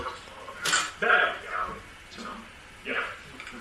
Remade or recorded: recorded